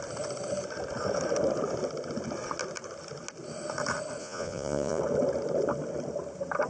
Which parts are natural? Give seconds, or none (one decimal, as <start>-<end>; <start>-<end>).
0.0-4.2; 5.0-6.7